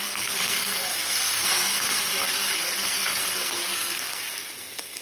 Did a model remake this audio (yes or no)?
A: yes